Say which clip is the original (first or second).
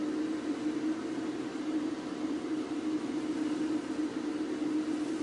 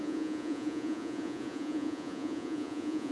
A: first